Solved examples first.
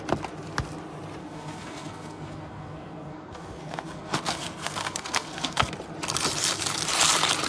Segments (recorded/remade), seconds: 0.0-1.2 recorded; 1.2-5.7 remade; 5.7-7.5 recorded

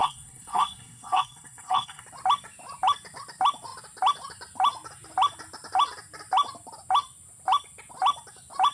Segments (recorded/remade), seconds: 0.0-2.0 remade; 2.0-8.7 recorded

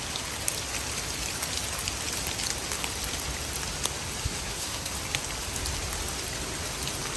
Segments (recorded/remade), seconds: 0.0-4.2 recorded; 4.2-4.9 remade; 4.9-7.2 recorded

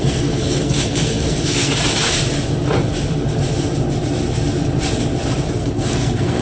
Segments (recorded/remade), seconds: 0.0-1.7 remade; 1.7-5.5 recorded; 5.5-6.4 remade

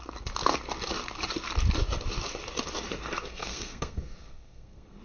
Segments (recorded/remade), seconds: 0.0-3.2 recorded; 3.2-5.0 remade

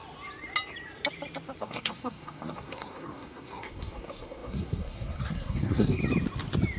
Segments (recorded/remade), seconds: 0.0-1.6 recorded; 1.6-6.0 remade; 6.0-6.8 recorded